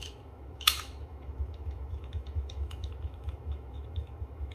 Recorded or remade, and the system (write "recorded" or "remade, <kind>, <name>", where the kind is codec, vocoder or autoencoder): remade, autoencoder, DAC-VAE